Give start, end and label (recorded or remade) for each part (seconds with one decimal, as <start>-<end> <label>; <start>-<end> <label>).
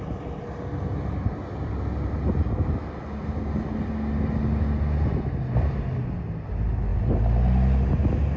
0.0-8.4 recorded